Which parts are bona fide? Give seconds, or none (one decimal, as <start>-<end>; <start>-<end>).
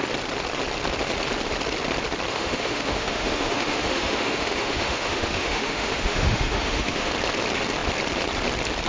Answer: 0.0-2.3; 7.1-8.9